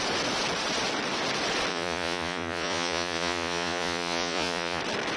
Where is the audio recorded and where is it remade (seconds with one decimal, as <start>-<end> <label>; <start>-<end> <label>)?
0.0-1.7 recorded; 1.7-4.8 remade; 4.8-5.2 recorded